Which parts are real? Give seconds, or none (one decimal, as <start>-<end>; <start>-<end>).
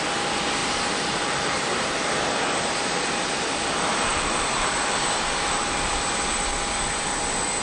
0.0-0.6; 2.1-4.1; 4.8-7.6